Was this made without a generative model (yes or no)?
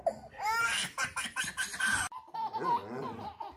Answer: yes